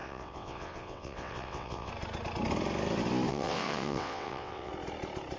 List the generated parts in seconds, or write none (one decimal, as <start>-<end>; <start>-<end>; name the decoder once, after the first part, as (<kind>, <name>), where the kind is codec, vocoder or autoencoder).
0.0-1.9 (vocoder, WaveNeXt); 3.3-4.7